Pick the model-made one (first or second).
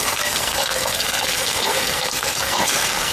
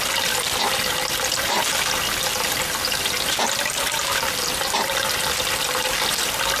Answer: first